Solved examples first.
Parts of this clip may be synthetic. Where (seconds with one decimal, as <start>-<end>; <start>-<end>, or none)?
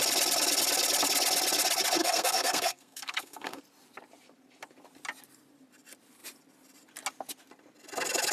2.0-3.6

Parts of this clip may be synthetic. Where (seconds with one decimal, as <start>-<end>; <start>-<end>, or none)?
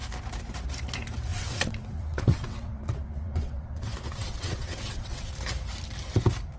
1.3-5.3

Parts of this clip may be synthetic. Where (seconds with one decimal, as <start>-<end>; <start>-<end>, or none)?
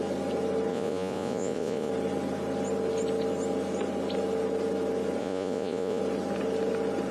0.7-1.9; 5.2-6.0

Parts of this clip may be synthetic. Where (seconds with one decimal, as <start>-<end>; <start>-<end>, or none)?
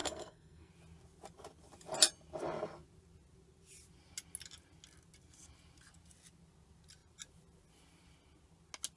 0.0-0.7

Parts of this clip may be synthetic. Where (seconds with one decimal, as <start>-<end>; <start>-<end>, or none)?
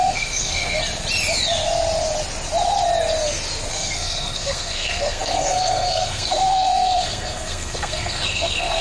0.0-0.8; 3.7-8.8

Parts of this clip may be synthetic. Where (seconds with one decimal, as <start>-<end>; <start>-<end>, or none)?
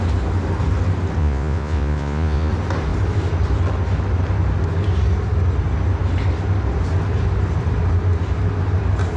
1.2-2.5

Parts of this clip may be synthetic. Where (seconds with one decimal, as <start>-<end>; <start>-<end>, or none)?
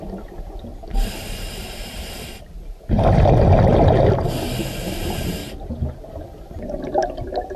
0.7-3.0; 5.4-6.1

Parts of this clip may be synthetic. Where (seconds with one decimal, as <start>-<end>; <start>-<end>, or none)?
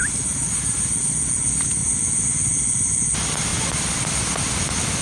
none